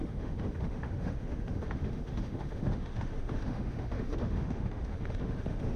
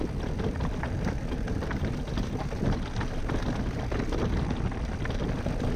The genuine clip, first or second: second